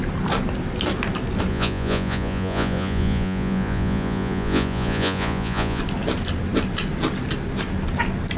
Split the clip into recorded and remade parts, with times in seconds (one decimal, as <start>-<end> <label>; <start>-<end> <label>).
0.0-1.5 recorded; 1.5-5.8 remade; 5.8-8.4 recorded